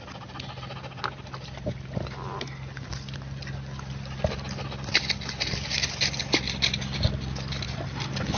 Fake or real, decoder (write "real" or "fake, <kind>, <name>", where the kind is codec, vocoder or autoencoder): real